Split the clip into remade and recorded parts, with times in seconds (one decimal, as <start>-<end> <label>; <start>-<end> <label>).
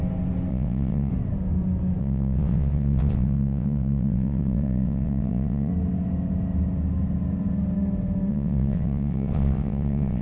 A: 0.0-0.5 recorded; 0.5-1.1 remade; 1.1-2.0 recorded; 2.0-5.7 remade; 5.7-8.3 recorded; 8.3-10.2 remade